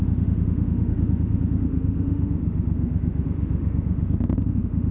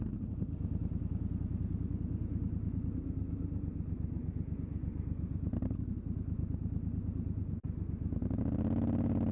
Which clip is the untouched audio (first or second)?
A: second